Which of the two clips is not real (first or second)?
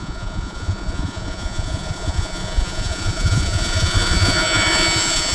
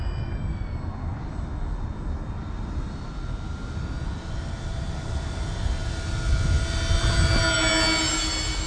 first